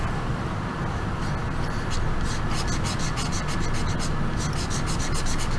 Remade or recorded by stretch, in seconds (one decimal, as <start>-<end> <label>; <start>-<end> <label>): 0.0-5.6 recorded